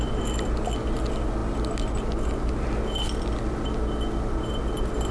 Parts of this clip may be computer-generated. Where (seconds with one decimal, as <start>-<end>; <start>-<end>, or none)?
none